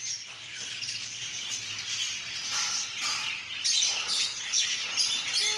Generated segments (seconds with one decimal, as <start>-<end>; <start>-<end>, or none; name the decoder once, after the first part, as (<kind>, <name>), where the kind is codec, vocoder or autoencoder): 4.0-4.9 (codec, HILCodec)